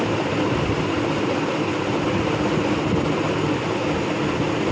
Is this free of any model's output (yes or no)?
yes